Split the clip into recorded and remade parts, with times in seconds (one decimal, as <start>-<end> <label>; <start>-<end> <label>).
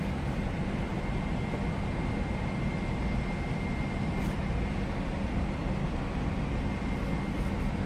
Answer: 0.0-7.9 recorded